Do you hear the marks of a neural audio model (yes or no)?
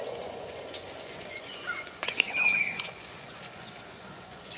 yes